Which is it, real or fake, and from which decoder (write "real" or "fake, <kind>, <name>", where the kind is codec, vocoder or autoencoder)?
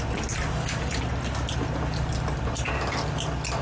real